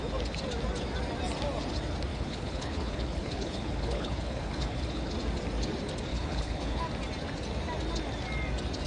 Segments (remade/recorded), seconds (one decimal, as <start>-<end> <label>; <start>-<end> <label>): 0.0-2.1 recorded; 2.1-5.1 remade; 5.1-6.1 recorded; 6.1-6.8 remade; 6.8-8.9 recorded